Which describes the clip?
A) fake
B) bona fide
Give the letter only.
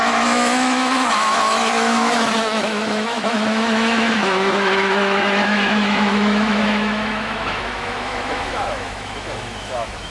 A